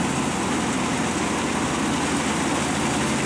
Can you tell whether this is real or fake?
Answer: real